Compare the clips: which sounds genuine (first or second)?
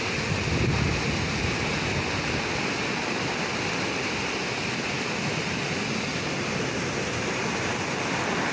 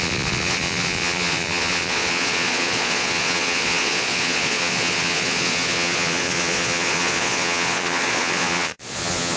first